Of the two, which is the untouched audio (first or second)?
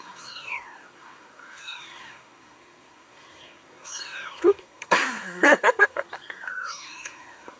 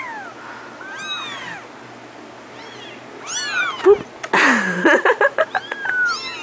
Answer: second